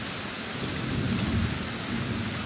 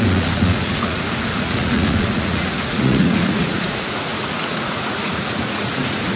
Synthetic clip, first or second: second